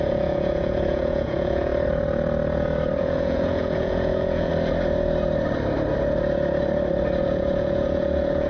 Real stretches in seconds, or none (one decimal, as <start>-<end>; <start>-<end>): 1.7-3.0; 4.5-7.2